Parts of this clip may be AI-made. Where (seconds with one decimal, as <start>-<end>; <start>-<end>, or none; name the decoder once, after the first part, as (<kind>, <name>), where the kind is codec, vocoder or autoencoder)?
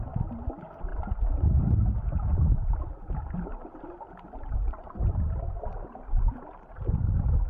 2.3-6.8 (vocoder, BigVGAN v2)